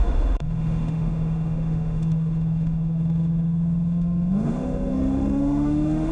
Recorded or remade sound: remade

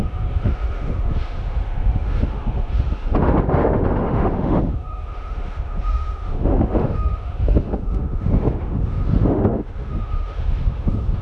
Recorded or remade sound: remade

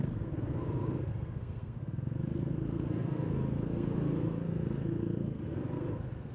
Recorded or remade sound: remade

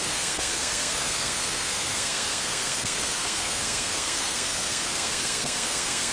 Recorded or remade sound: remade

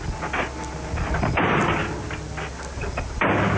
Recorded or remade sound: recorded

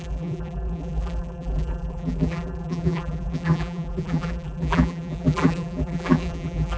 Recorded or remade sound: remade